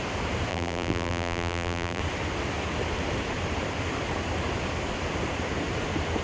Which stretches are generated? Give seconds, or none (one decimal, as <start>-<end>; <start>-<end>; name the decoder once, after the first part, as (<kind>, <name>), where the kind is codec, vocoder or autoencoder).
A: 0.5-2.0 (vocoder, BigVGAN v2)